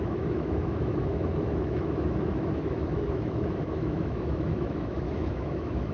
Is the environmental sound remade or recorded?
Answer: remade